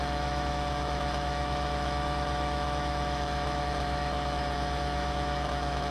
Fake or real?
fake